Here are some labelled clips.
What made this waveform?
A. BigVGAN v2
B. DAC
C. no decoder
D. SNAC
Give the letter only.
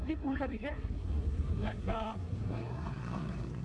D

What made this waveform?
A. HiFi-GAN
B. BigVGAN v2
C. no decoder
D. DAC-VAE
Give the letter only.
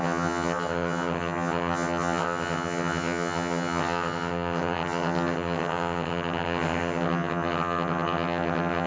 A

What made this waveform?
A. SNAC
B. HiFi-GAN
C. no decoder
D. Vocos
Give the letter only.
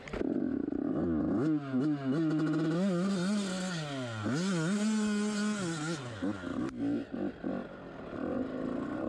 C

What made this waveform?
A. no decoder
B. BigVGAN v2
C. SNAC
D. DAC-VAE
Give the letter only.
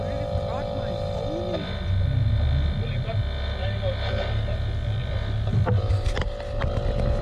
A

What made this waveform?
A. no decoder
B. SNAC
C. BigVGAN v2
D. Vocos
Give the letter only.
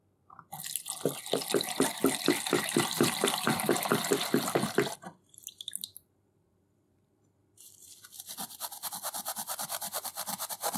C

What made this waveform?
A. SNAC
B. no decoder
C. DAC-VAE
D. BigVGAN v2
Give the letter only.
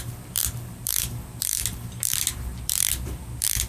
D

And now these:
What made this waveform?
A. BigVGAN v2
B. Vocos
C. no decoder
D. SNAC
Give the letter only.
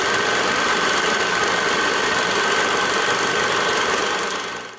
A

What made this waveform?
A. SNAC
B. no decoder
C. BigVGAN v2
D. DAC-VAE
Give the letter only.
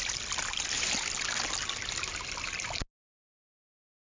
B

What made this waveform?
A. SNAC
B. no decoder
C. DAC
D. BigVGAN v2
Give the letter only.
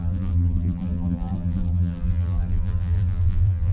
D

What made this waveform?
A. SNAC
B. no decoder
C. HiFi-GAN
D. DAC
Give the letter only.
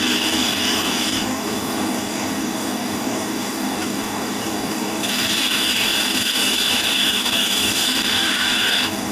D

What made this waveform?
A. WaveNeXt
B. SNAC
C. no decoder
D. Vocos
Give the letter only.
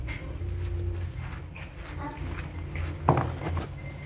C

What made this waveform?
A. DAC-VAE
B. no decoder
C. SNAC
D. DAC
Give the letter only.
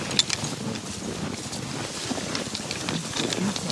B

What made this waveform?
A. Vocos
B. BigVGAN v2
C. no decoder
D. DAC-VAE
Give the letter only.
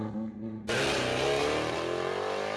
C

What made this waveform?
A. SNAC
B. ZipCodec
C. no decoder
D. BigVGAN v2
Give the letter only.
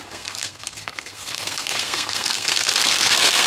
A